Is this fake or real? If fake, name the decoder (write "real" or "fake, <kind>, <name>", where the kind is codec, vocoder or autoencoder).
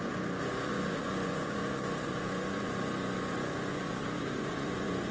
fake, vocoder, Vocos